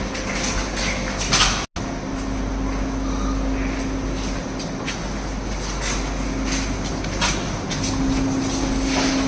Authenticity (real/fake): real